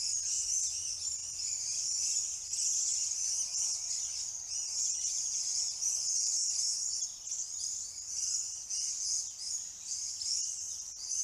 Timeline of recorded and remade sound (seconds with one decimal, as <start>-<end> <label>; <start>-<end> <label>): 0.0-9.2 recorded; 9.2-11.2 remade